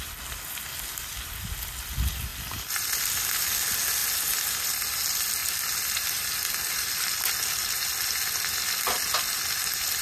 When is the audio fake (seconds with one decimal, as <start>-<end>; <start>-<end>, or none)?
none